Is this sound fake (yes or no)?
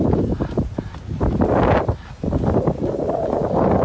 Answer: no